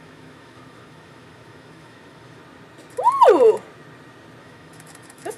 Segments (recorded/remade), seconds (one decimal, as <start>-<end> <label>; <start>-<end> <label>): 0.0-2.4 remade; 2.4-4.4 recorded; 4.4-5.4 remade